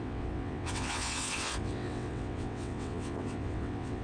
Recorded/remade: remade